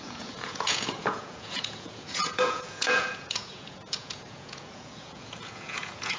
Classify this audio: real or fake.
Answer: fake